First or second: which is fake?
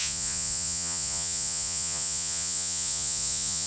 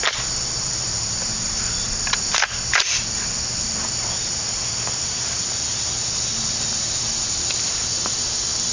first